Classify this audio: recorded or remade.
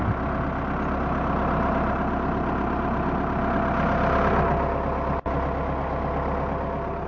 recorded